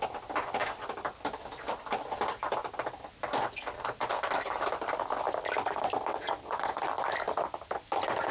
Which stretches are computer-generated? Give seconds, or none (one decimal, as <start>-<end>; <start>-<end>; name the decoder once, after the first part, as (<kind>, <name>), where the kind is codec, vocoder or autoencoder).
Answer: 6.1-6.8 (vocoder, WaveNeXt)